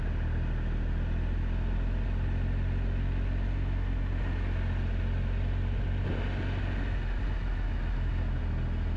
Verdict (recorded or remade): recorded